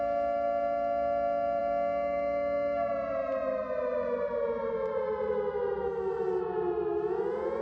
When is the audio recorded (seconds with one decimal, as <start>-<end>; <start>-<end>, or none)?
0.0-7.6